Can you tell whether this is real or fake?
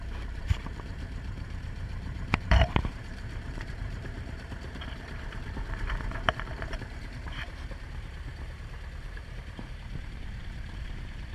fake